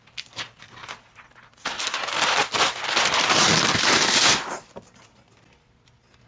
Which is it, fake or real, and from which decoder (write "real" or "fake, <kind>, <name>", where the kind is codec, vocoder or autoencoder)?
real